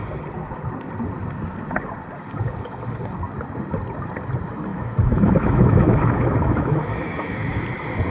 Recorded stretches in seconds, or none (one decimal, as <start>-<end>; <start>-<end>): 0.0-4.7; 7.6-8.1